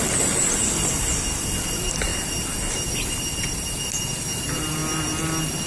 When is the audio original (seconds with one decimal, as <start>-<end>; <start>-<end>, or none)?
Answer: 0.0-5.7

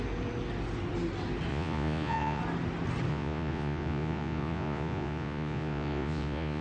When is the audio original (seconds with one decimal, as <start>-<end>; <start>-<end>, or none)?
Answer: 0.0-1.5; 2.4-3.1

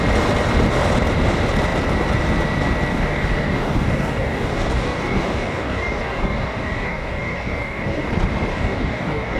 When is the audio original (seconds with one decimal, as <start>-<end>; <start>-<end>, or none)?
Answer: 0.0-2.9; 8.1-8.5